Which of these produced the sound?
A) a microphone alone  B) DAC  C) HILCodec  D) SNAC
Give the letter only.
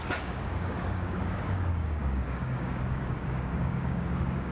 B